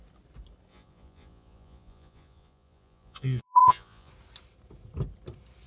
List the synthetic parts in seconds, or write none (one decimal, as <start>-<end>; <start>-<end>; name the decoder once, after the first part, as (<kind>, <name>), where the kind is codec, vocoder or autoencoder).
0.7-4.1 (vocoder, Vocos)